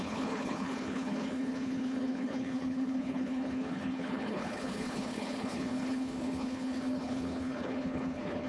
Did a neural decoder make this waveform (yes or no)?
yes